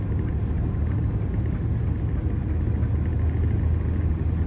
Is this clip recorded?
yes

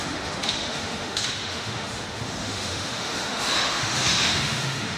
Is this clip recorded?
no